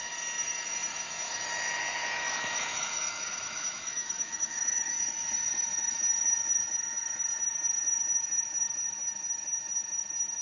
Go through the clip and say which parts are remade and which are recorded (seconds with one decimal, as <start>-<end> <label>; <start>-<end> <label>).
0.0-2.0 recorded; 2.0-4.9 remade; 4.9-10.4 recorded